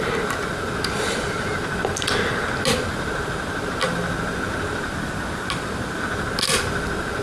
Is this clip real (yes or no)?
yes